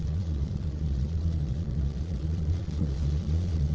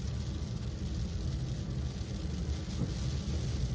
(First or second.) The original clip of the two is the second